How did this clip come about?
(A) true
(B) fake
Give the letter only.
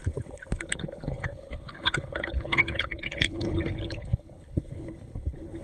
B